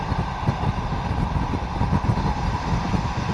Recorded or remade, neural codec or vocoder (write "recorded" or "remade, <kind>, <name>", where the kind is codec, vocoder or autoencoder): recorded